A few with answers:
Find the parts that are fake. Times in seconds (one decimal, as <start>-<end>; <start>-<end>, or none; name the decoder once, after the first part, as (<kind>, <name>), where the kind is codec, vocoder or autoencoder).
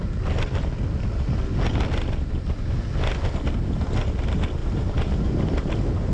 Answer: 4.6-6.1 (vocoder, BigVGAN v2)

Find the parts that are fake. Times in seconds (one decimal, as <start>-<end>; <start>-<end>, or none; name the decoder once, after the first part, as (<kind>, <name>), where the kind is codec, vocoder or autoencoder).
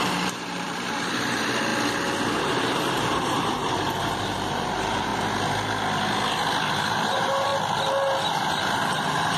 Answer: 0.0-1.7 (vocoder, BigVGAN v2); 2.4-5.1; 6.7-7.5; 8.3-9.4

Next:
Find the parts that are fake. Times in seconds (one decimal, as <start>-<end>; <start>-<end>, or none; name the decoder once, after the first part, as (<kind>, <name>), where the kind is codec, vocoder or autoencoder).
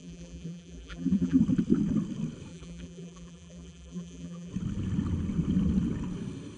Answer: 0.0-1.4 (vocoder, BigVGAN v2); 2.5-4.5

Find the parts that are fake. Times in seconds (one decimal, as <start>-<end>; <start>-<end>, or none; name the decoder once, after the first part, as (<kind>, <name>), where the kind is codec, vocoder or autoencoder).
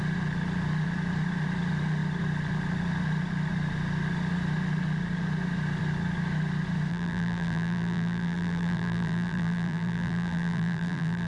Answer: 6.9-11.3 (vocoder, BigVGAN v2)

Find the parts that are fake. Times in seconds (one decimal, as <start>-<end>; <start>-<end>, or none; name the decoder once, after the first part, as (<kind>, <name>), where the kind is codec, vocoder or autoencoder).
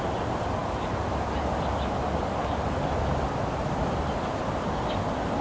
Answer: 3.6-4.3 (vocoder, BigVGAN v2)